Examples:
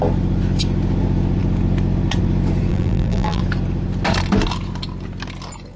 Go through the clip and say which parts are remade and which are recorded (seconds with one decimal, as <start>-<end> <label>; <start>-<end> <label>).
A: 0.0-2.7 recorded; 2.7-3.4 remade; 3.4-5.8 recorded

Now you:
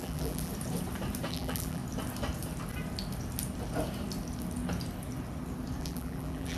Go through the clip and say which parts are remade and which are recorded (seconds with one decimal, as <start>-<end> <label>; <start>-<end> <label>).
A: 0.0-0.5 remade; 0.5-1.3 recorded; 1.3-1.8 remade; 1.8-5.8 recorded; 5.8-6.6 remade

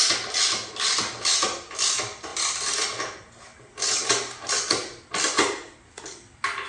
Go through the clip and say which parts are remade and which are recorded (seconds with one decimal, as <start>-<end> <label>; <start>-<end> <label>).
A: 0.0-6.7 recorded

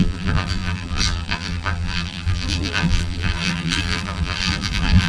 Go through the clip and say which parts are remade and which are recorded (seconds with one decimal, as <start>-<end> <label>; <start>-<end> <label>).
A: 0.0-5.1 remade